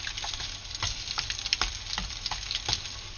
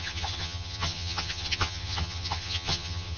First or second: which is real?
first